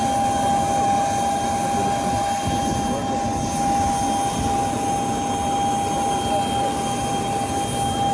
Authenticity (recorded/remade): recorded